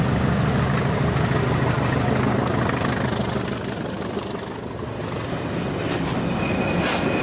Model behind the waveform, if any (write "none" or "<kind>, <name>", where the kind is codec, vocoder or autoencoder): none